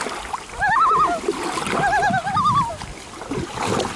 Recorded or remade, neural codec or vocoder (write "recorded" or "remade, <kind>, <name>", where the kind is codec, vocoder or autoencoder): recorded